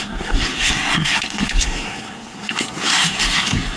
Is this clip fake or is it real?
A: fake